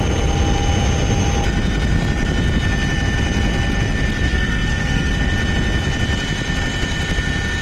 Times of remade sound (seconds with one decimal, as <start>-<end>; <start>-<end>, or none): 4.3-5.1